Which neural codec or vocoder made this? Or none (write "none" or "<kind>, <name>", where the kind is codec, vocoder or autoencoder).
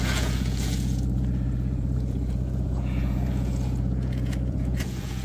vocoder, Vocos